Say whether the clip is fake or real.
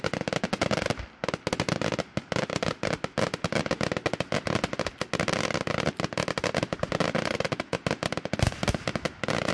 real